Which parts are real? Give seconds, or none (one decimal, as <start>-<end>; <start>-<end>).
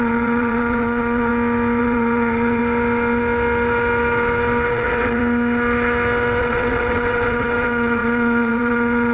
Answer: 1.3-1.8; 2.6-4.7; 5.2-6.4